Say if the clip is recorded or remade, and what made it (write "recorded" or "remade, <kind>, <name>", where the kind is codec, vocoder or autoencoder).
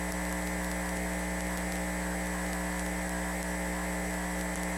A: recorded